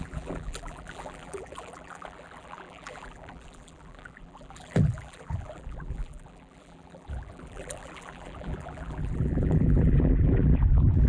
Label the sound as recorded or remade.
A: remade